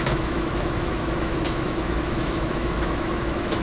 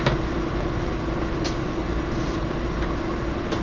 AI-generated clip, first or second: first